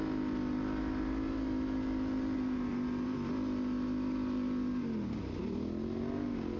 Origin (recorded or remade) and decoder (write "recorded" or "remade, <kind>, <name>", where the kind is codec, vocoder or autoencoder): recorded